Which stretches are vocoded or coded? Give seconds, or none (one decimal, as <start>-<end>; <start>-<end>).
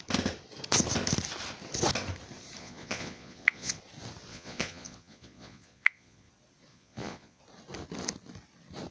2.6-3.8; 4.3-6.3; 6.7-7.4